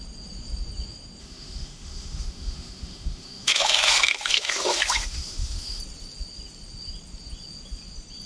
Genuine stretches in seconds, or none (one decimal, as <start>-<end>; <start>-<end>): 0.0-1.2; 5.8-8.3